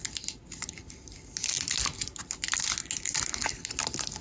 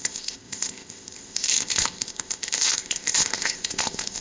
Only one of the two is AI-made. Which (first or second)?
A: second